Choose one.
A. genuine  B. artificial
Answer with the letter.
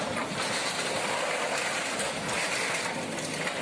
A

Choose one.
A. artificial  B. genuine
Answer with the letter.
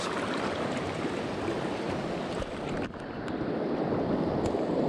B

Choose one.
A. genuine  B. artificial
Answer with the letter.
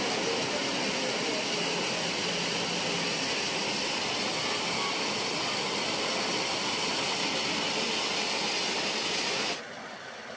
A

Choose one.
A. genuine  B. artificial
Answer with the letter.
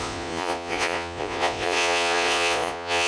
B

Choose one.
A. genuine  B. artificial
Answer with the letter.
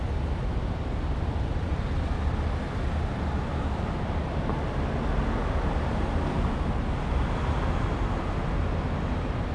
A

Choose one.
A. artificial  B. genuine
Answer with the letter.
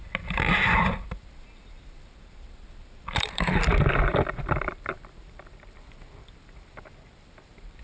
A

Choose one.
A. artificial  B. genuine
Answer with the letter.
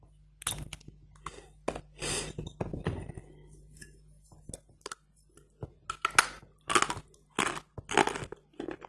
B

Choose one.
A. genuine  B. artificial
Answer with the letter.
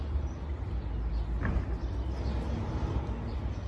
A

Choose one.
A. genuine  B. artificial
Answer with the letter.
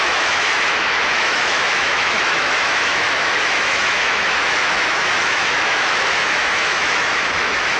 B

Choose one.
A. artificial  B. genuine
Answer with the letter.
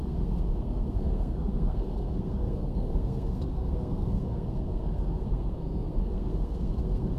A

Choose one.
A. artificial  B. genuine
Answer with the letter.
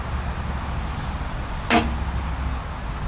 B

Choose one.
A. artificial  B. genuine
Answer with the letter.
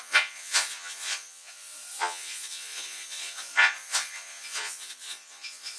A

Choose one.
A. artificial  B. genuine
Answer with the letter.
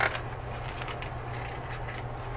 B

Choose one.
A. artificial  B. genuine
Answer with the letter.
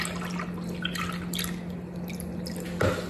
B